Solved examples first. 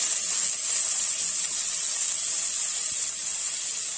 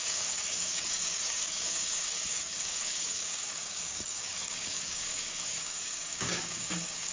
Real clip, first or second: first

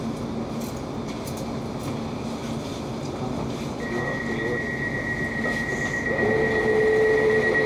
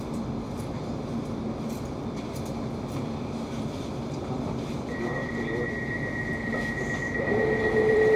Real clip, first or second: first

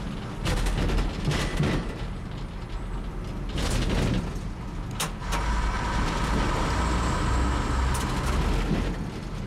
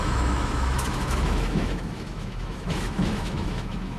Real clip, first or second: first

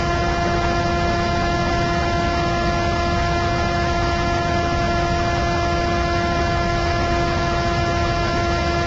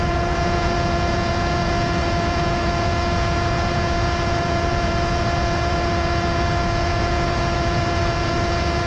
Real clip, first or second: first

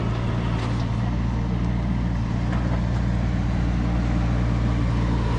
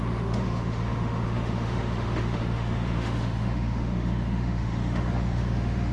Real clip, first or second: first